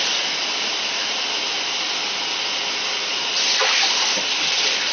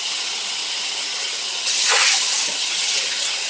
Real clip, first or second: first